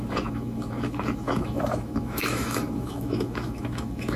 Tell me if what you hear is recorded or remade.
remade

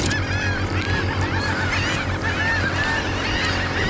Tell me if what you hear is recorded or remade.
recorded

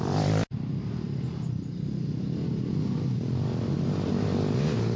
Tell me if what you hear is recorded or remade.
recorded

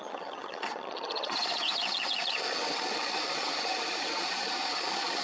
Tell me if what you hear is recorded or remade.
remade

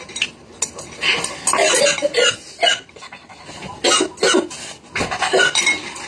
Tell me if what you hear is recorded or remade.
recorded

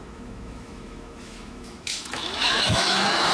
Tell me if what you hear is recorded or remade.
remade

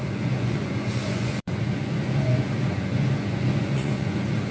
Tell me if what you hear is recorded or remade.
remade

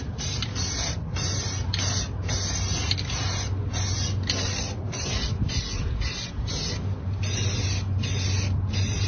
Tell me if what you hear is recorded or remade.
recorded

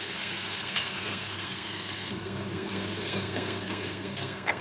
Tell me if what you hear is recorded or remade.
remade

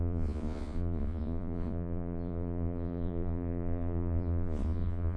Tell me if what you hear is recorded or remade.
remade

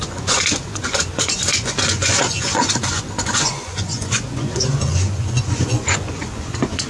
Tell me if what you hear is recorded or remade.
remade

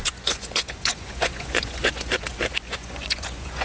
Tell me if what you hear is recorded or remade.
remade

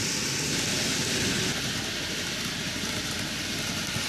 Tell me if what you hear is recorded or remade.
recorded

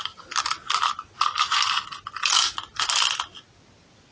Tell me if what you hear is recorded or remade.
recorded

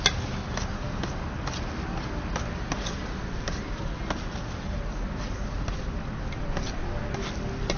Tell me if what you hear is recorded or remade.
recorded